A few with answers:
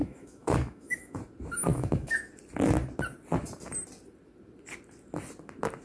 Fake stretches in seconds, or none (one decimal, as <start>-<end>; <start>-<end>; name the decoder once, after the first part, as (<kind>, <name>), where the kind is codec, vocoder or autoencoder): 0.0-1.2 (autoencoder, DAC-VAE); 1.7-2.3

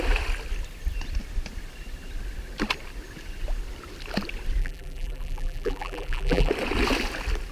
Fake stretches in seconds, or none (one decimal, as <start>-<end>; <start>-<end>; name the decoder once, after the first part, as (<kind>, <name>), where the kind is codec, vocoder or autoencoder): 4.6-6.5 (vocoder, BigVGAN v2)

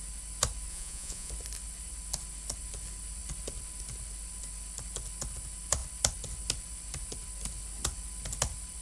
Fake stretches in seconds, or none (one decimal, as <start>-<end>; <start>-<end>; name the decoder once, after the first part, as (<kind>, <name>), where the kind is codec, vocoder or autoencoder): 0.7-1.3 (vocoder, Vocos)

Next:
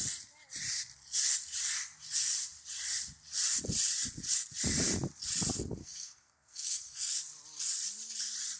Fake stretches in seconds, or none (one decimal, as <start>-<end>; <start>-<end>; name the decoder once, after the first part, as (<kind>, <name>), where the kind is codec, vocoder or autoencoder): 5.8-7.1 (codec, SNAC)

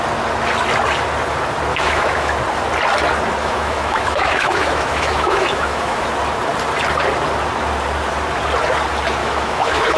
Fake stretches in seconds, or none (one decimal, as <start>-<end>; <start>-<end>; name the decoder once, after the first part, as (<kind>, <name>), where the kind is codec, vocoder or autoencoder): 1.7-2.3 (autoencoder, DAC-VAE); 3.4-6.1; 9.2-10.0

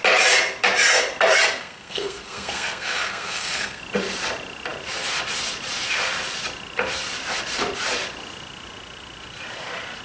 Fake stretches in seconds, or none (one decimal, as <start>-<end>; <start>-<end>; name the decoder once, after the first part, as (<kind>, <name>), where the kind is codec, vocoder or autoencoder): 1.6-3.8 (codec, SNAC)